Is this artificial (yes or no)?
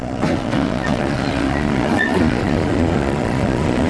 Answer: yes